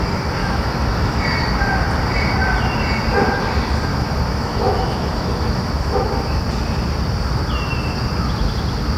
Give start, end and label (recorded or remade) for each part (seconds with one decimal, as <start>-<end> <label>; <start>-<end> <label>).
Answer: 0.0-0.4 recorded; 0.4-1.2 remade; 1.2-3.9 recorded; 3.9-6.4 remade; 6.4-9.0 recorded